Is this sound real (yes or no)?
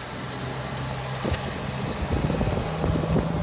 yes